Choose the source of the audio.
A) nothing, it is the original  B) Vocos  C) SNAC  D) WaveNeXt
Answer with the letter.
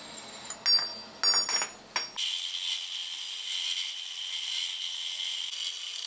A